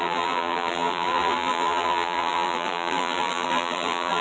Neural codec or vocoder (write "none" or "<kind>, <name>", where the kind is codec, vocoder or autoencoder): vocoder, BigVGAN v2